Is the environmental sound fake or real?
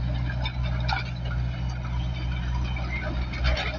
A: real